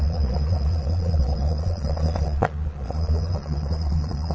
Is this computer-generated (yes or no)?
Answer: yes